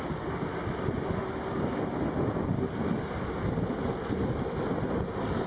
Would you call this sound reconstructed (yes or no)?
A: no